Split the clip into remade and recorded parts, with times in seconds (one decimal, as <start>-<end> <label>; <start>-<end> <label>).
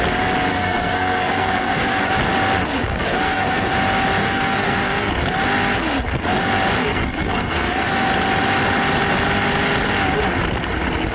0.0-0.5 recorded; 0.5-2.1 remade; 2.1-2.8 recorded; 2.8-3.7 remade; 3.7-4.2 recorded; 4.2-5.1 remade; 5.1-6.8 recorded; 6.8-7.9 remade; 7.9-11.1 recorded